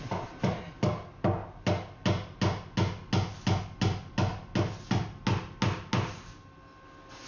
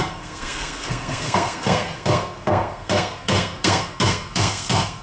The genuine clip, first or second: first